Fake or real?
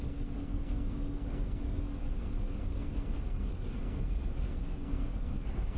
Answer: fake